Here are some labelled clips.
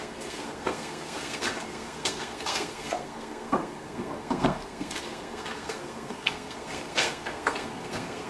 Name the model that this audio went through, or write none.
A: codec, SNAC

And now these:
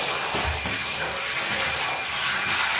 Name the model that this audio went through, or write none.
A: none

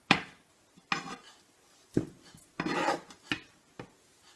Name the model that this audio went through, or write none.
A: none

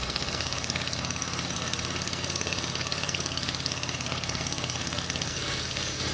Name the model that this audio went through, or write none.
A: codec, SNAC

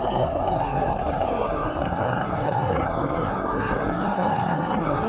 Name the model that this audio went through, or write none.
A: codec, SNAC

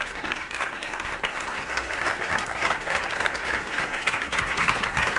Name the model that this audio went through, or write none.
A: codec, SNAC